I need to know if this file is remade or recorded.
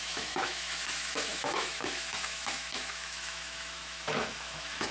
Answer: remade